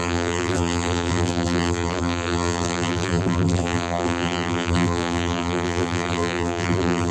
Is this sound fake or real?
fake